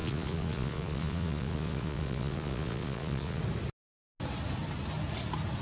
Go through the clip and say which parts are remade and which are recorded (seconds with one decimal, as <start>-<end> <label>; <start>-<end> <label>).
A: 0.0-3.4 remade; 3.4-5.6 recorded